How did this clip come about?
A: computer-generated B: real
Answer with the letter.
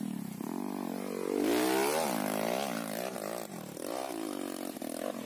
B